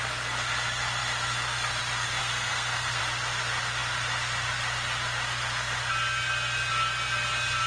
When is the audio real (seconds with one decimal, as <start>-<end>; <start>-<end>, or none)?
0.0-2.2; 3.0-7.7